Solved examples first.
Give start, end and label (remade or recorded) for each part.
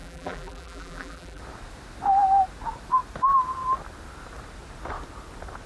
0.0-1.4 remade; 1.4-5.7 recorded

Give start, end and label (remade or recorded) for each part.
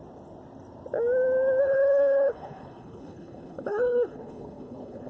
0.0-1.6 recorded; 1.6-5.1 remade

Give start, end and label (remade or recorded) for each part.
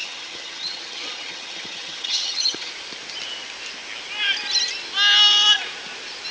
0.0-2.7 remade; 2.7-6.3 recorded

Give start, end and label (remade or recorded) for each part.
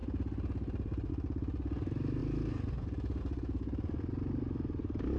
0.0-5.2 recorded